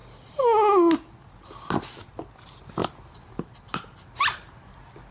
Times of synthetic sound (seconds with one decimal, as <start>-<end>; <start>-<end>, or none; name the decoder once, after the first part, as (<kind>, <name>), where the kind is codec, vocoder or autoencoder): none